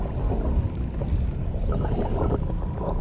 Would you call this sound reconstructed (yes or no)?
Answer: no